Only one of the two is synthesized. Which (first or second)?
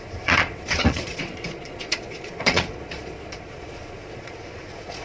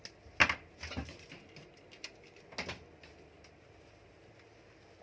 first